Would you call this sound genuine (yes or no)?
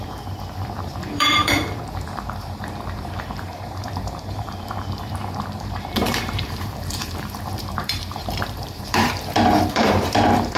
no